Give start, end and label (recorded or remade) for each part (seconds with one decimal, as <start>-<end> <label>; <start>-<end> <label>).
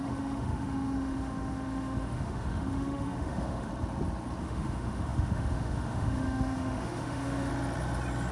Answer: 0.0-3.7 remade; 3.7-4.4 recorded; 4.4-7.5 remade; 7.5-8.3 recorded